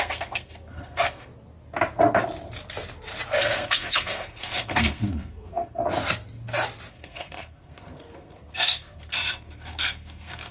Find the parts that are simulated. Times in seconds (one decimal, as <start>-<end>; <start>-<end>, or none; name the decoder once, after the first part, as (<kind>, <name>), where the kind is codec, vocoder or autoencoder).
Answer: 0.0-1.3 (codec, SNAC); 3.4-5.8; 6.9-10.5